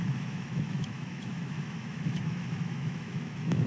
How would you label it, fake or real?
fake